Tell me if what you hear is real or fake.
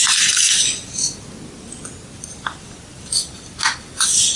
real